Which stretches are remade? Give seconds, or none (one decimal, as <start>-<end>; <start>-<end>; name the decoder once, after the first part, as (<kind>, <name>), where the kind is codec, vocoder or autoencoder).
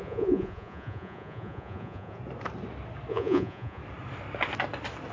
0.0-2.2 (vocoder, Vocos); 3.1-3.8